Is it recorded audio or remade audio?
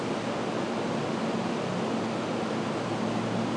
recorded